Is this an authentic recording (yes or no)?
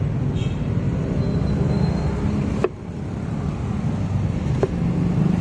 yes